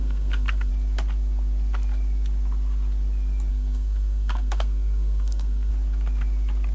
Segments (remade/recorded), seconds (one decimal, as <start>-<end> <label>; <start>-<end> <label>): 0.0-0.7 remade; 0.7-3.5 recorded; 3.5-5.7 remade; 5.7-6.7 recorded